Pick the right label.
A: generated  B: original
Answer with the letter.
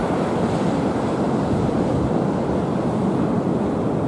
B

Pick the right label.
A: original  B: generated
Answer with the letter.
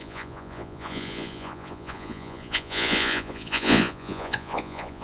B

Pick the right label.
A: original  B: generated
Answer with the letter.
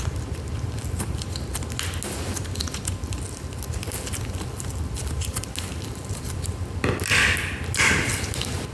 A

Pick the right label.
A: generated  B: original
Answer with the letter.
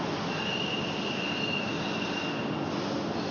B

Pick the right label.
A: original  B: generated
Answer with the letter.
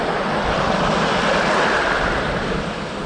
A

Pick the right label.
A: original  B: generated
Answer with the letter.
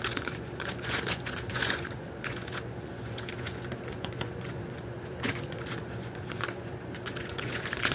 B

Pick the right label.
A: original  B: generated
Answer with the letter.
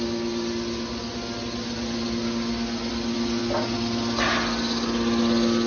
A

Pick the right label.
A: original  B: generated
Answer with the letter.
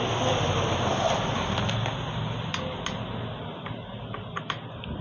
A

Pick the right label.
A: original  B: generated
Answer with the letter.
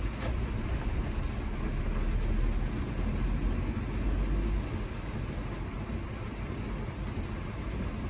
A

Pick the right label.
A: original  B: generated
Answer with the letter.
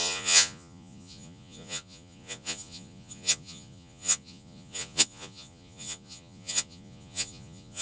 B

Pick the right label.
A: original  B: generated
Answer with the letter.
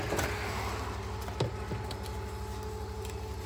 A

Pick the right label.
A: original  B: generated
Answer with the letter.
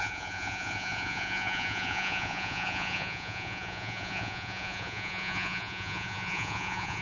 B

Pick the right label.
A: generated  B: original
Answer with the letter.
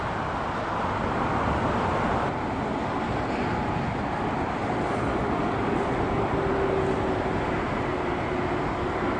B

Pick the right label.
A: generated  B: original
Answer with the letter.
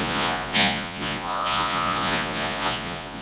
A